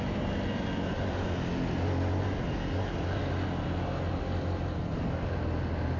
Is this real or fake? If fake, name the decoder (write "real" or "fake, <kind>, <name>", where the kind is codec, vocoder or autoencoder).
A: real